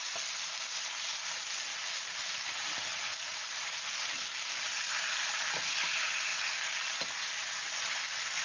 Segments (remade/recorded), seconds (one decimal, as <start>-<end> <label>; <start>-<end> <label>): 0.0-1.7 recorded; 1.7-2.7 remade; 2.7-3.1 recorded; 3.1-4.5 remade; 4.5-8.4 recorded